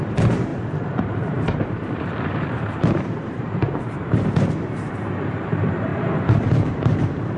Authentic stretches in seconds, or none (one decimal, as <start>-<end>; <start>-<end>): none